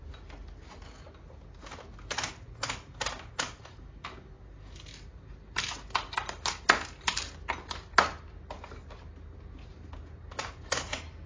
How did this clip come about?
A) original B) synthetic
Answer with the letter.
A